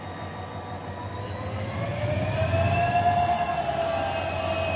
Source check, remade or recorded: recorded